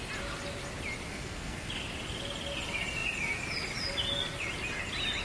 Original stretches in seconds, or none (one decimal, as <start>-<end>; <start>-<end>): 0.0-1.1; 1.7-5.2